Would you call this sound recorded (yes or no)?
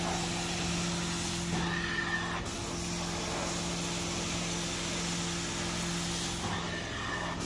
yes